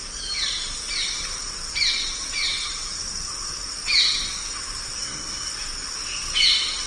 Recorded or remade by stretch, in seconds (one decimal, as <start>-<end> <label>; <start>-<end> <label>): 0.0-5.0 recorded; 5.0-5.5 remade; 5.5-6.9 recorded